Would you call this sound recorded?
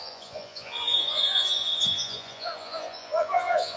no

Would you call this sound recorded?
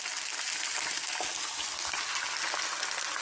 yes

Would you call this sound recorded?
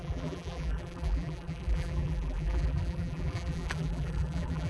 no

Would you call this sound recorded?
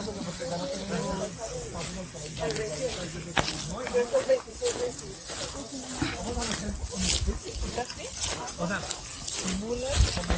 yes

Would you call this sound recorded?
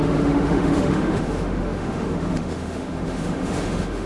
no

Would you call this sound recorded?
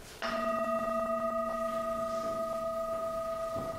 yes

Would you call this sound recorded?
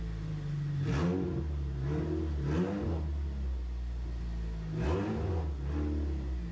yes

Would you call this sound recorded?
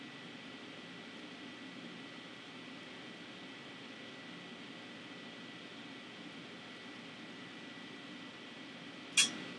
yes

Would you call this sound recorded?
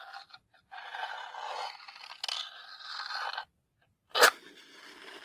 yes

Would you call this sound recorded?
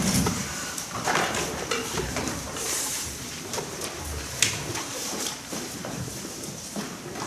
no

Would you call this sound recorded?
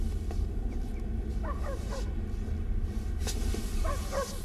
yes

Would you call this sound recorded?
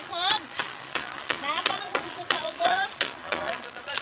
no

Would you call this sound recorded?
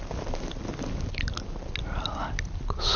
yes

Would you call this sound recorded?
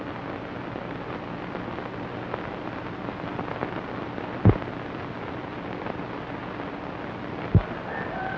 yes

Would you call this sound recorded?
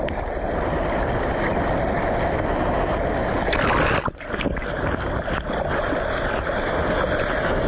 yes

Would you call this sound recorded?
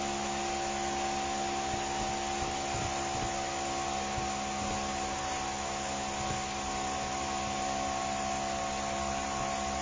yes